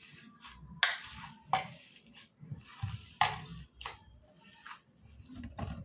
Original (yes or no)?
yes